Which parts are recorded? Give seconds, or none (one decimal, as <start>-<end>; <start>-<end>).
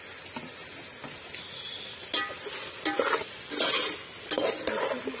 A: 0.0-5.2